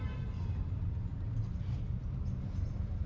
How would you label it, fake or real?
fake